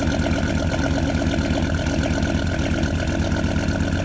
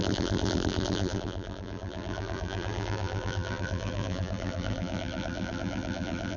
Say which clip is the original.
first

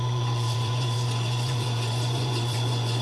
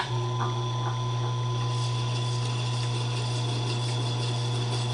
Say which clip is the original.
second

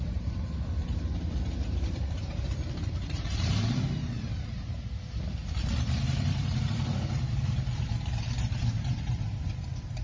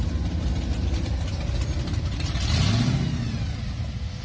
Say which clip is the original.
second